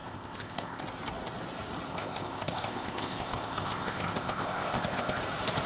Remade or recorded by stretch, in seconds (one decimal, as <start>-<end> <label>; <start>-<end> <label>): 0.0-0.8 remade; 0.8-1.9 recorded; 1.9-5.2 remade; 5.2-5.7 recorded